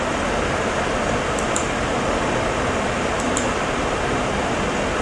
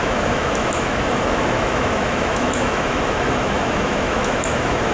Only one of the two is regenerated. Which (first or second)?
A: second